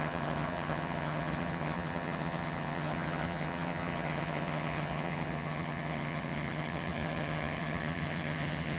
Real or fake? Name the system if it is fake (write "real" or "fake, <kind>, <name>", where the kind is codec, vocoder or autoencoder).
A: fake, vocoder, HiFi-GAN